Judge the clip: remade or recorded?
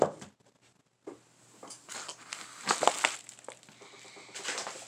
recorded